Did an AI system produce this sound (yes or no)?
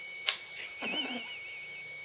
no